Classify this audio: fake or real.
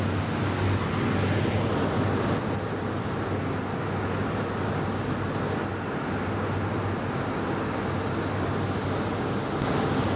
real